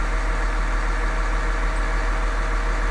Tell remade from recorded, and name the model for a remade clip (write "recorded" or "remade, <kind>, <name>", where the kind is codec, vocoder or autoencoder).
remade, vocoder, BigVGAN v2